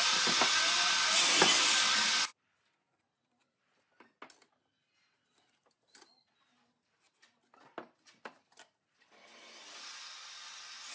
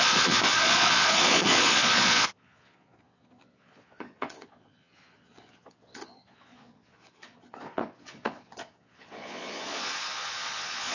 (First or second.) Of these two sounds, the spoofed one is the second